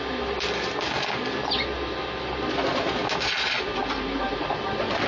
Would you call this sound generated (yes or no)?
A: no